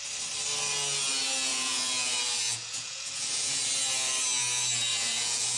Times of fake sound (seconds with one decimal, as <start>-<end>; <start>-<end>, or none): 1.5-3.5; 4.9-5.6